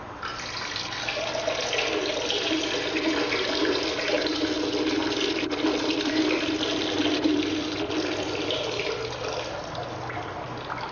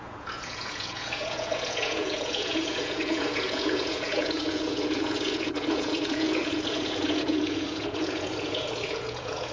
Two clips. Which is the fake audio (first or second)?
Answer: second